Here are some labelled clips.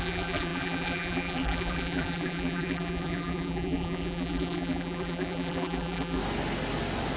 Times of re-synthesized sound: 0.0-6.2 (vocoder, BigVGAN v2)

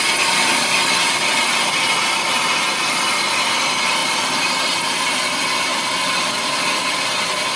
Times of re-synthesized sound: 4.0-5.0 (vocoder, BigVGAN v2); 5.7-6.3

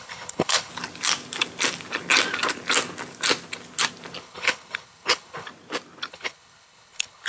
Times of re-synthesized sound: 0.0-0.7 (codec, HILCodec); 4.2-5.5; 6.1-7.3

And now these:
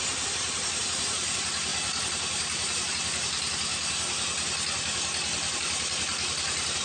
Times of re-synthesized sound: 0.0-3.7 (vocoder, BigVGAN v2); 5.5-6.8